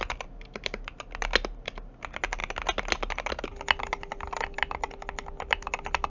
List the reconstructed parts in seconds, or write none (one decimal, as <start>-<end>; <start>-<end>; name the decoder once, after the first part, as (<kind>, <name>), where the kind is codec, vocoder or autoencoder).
none